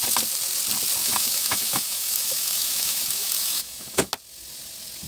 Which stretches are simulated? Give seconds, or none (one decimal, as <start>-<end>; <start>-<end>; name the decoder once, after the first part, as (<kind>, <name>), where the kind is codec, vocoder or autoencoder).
1.0-4.1 (autoencoder, DAC-VAE)